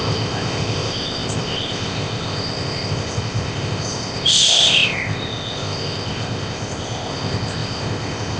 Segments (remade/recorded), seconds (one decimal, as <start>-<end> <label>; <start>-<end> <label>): 0.0-8.4 remade